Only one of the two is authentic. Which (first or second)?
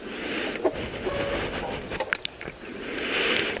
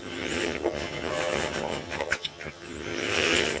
first